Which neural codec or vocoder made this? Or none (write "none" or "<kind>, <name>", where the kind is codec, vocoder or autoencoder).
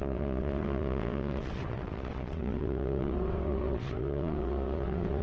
vocoder, WaveNeXt